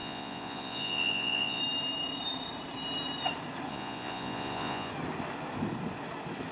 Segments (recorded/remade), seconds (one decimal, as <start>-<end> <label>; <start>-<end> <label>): 0.0-1.6 remade; 1.6-3.7 recorded; 3.7-4.9 remade; 4.9-6.5 recorded